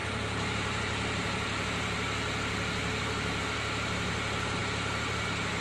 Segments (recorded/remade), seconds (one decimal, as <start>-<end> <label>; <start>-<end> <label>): 0.0-3.4 remade; 3.4-5.6 recorded